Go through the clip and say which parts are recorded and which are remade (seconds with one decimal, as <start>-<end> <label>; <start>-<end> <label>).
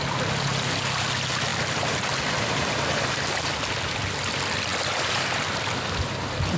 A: 0.0-6.6 recorded